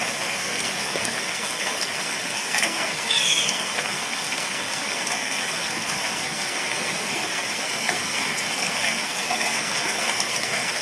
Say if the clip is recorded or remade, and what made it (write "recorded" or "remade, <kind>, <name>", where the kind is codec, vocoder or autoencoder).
remade, codec, SNAC